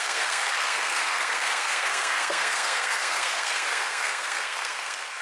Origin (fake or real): fake